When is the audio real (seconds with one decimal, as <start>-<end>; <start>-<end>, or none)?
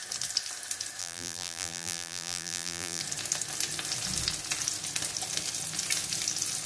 0.0-1.0; 3.0-6.7